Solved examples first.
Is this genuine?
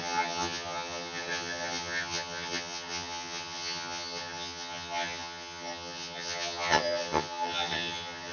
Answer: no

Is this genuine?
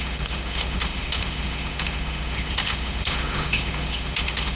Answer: no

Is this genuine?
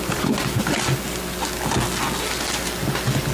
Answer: yes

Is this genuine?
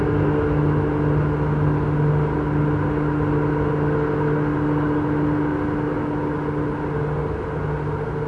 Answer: yes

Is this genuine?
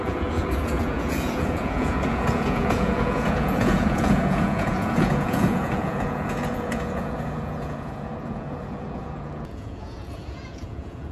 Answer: no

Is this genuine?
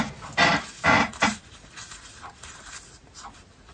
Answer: yes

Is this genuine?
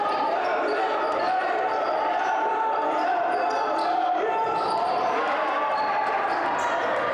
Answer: no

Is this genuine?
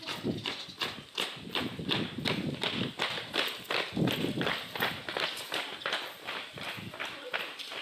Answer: yes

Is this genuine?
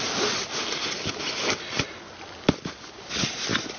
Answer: yes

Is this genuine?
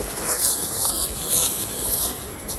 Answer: no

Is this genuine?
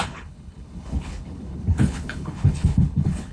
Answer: no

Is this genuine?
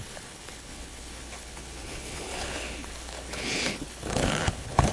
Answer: no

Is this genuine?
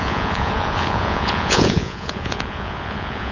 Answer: no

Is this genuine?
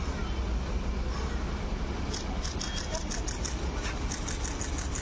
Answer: yes